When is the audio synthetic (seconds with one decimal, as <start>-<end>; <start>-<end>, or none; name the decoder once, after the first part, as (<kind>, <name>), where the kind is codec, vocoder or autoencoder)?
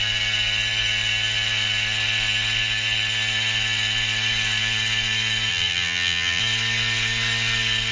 5.5-6.4 (vocoder, BigVGAN v2)